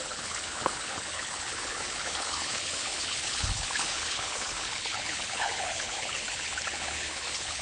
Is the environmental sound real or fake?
fake